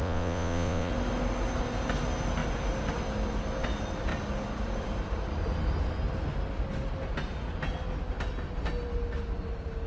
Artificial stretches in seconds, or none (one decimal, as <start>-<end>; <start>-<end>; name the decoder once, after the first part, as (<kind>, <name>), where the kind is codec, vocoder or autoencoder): 0.0-0.9 (vocoder, Vocos)